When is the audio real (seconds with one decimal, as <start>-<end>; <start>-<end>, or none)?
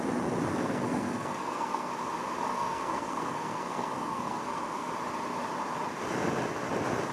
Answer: 0.0-0.5; 1.9-2.5; 4.9-7.1